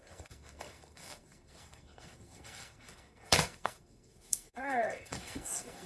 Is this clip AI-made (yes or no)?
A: yes